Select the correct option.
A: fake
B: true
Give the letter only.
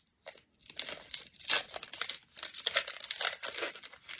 B